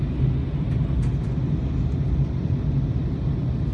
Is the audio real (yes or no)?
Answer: yes